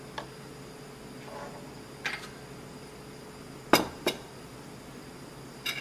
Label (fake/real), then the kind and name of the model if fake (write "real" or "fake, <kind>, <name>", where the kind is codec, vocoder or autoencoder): real